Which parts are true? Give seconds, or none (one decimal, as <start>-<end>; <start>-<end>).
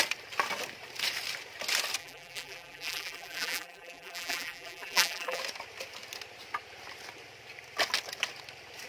0.0-2.0; 5.4-8.9